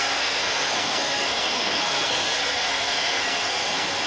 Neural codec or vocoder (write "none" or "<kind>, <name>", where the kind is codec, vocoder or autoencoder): codec, SNAC